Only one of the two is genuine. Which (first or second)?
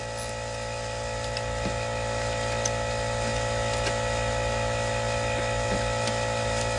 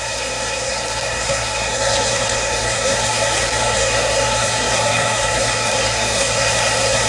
first